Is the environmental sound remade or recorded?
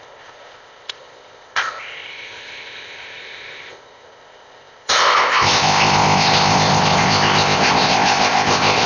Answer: remade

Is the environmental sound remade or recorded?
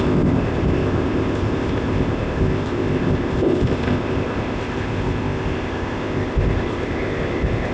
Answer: remade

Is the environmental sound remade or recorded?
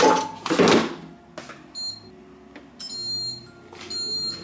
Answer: recorded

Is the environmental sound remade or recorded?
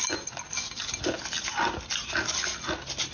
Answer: recorded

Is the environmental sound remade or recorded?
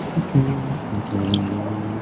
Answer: recorded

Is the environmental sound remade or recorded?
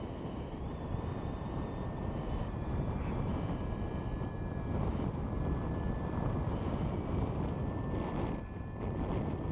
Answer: recorded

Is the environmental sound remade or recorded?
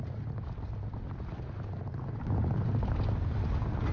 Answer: recorded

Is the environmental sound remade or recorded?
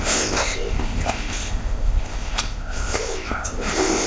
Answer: remade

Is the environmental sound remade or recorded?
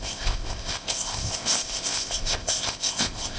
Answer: remade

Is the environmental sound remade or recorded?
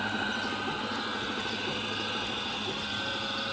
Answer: recorded